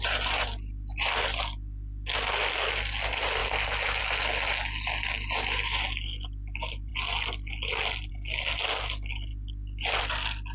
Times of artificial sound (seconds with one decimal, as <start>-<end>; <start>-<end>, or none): none